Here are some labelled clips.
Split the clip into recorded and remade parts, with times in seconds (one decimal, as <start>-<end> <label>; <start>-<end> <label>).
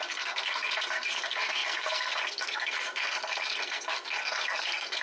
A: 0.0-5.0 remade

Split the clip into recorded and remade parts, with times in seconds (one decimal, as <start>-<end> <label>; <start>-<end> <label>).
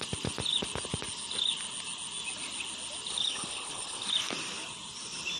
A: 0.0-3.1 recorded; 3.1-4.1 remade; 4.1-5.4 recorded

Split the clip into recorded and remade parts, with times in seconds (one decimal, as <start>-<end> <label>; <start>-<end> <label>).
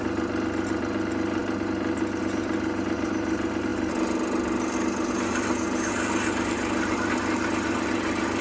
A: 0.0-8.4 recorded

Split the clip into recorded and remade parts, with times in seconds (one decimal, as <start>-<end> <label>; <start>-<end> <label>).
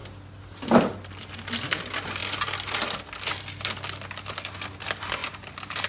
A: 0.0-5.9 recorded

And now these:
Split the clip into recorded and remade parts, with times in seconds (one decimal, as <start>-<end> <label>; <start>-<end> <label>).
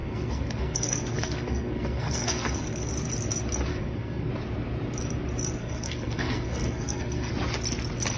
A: 0.0-2.9 remade; 2.9-3.7 recorded; 3.7-4.3 remade; 4.3-5.6 recorded; 5.6-7.3 remade; 7.3-8.2 recorded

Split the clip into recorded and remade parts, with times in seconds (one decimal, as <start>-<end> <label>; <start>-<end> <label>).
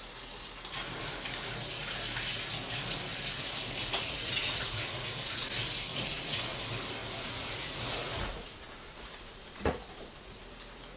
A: 0.0-3.8 recorded; 3.8-5.5 remade; 5.5-5.9 recorded; 5.9-6.6 remade; 6.6-7.0 recorded; 7.0-10.4 remade; 10.4-11.0 recorded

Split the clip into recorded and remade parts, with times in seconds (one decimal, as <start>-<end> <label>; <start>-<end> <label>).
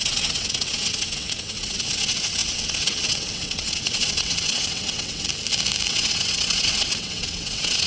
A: 0.0-5.3 remade; 5.3-5.9 recorded; 5.9-7.9 remade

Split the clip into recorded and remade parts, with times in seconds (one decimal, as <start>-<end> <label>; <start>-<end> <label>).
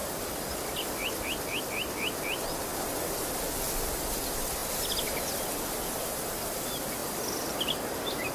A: 0.0-8.3 recorded